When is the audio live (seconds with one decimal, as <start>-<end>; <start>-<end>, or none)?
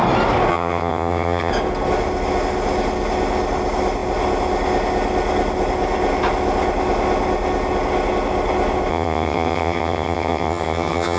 0.0-0.5; 1.5-8.9